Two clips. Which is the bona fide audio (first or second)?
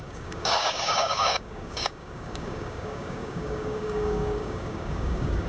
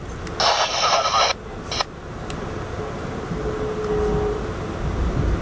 second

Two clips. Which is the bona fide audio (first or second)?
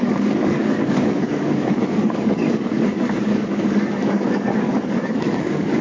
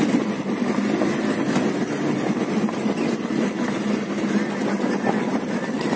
second